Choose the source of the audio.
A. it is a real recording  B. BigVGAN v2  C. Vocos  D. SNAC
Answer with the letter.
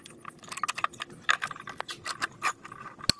A